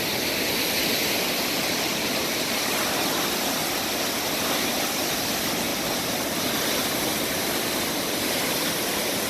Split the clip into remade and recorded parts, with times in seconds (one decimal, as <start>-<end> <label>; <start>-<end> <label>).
0.0-1.0 recorded; 1.0-4.9 remade; 4.9-5.7 recorded; 5.7-6.5 remade; 6.5-7.1 recorded; 7.1-8.8 remade; 8.8-9.3 recorded